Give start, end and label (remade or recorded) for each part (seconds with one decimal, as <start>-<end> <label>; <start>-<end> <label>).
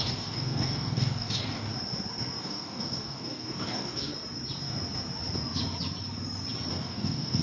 0.0-1.7 remade; 1.7-2.4 recorded; 2.4-4.1 remade; 4.1-6.7 recorded; 6.7-7.4 remade